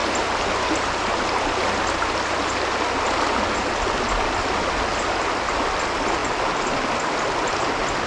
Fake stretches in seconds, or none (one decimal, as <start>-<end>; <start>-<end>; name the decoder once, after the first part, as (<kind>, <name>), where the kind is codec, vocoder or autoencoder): none